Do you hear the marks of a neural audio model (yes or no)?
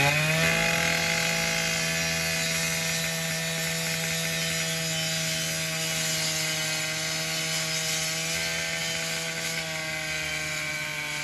no